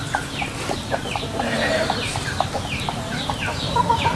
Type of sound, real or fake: fake